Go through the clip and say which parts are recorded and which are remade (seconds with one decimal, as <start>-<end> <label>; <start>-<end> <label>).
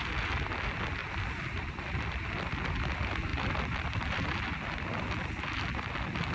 0.0-1.0 recorded; 1.0-2.9 remade; 2.9-3.3 recorded; 3.3-4.4 remade; 4.4-6.3 recorded